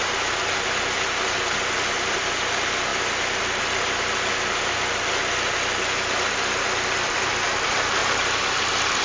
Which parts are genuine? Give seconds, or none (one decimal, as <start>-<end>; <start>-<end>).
none